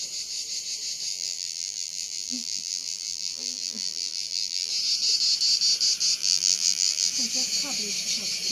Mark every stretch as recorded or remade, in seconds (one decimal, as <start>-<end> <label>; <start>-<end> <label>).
0.0-1.1 recorded; 1.1-4.7 remade; 4.7-6.2 recorded; 6.2-7.1 remade; 7.1-8.5 recorded